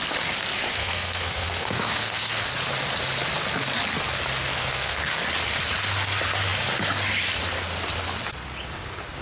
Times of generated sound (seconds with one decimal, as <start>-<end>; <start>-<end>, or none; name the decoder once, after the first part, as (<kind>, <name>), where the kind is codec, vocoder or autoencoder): 0.8-2.3 (codec, SNAC); 4.6-5.2